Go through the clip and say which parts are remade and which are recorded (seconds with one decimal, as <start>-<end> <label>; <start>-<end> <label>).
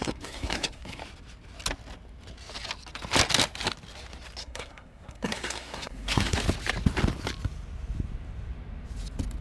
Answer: 0.0-1.0 remade; 1.0-4.4 recorded; 4.4-6.4 remade; 6.4-9.4 recorded